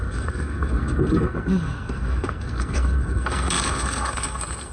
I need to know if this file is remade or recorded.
remade